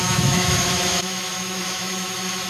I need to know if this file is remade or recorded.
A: remade